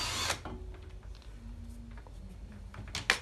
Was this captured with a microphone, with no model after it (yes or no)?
yes